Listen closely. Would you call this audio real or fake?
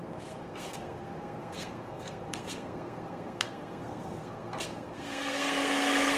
fake